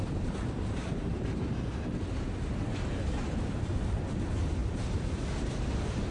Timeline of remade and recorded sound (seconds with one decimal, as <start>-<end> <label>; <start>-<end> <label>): 0.0-1.1 remade; 1.1-3.4 recorded; 3.4-4.6 remade; 4.6-5.4 recorded; 5.4-6.1 remade